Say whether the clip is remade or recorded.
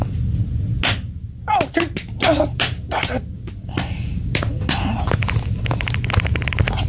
recorded